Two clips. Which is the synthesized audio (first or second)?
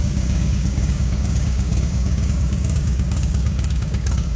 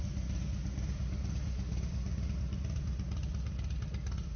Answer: first